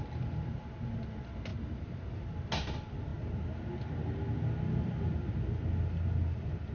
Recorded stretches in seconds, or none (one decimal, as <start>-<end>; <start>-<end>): 0.0-6.7